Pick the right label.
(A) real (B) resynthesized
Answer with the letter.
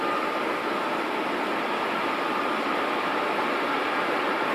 A